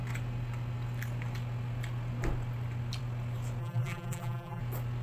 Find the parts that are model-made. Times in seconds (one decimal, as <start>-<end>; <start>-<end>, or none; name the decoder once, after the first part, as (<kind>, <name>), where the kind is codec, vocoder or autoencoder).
3.6-4.6 (vocoder, BigVGAN v2)

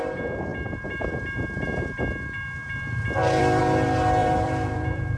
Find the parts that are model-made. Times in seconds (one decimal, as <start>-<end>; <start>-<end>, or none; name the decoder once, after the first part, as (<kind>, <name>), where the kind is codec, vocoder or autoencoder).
0.5-3.6 (vocoder, BigVGAN v2); 4.2-5.2

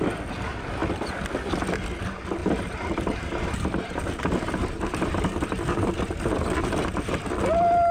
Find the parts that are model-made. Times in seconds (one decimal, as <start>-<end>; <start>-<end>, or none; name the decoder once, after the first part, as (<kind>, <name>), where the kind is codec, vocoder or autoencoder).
2.4-7.1 (vocoder, BigVGAN v2)

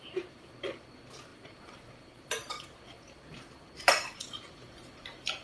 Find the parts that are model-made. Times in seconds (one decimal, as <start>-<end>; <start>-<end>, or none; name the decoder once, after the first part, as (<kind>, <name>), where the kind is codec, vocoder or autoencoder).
0.0-5.4 (vocoder, BigVGAN v2)

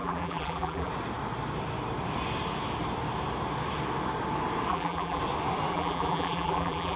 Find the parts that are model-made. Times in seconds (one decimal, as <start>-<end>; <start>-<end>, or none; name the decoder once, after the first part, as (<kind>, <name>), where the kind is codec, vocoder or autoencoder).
0.0-0.9 (vocoder, BigVGAN v2); 4.7-5.2; 5.7-7.0

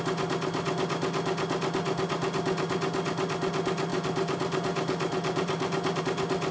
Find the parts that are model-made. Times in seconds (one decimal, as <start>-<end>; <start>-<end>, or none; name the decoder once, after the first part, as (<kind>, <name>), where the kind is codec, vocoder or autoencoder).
3.9-6.0 (vocoder, BigVGAN v2)

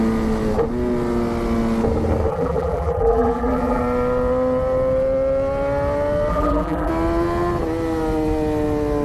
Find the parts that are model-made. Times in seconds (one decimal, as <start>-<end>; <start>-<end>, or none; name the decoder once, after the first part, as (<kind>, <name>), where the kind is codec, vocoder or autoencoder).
2.3-3.8 (vocoder, BigVGAN v2); 6.3-6.9